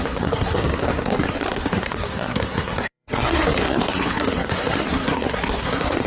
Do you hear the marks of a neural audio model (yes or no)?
yes